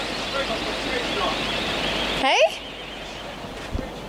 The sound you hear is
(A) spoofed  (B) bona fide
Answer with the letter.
B